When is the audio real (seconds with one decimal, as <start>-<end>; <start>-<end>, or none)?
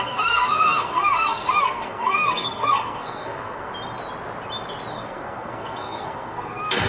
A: 3.7-4.9